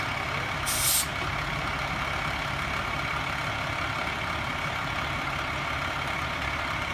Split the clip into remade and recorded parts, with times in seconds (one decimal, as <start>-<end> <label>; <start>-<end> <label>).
0.0-6.9 recorded